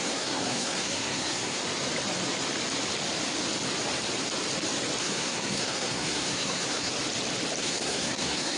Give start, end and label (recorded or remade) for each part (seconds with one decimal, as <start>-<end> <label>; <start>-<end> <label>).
0.0-1.6 remade; 1.6-5.0 recorded; 5.0-6.9 remade; 6.9-7.6 recorded; 7.6-8.6 remade